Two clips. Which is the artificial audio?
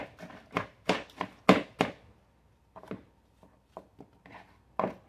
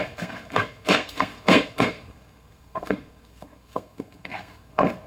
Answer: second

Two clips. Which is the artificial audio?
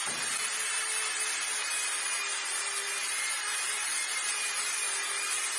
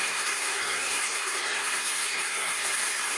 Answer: second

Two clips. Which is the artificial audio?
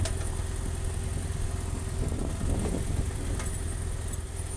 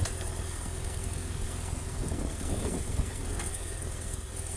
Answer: second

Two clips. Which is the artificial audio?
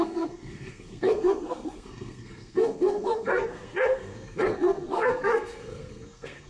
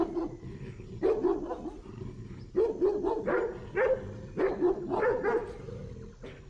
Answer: first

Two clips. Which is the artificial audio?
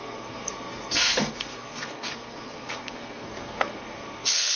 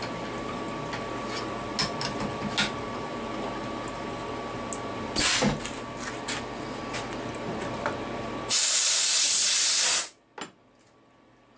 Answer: first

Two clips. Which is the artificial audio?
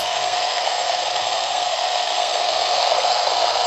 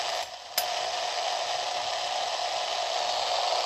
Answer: first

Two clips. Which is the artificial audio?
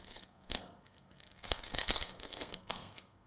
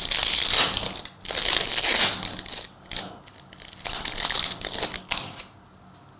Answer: first